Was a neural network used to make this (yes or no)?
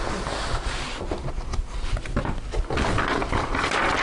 no